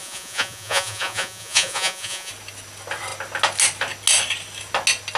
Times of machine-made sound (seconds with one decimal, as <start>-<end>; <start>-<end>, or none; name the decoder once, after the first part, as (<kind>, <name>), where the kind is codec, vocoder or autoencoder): 0.0-2.3 (vocoder, Vocos)